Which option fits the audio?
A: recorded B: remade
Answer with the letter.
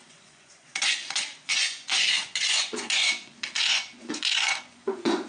B